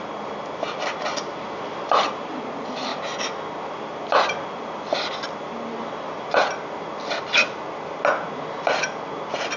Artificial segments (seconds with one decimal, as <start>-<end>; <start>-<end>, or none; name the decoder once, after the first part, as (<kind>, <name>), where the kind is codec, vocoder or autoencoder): none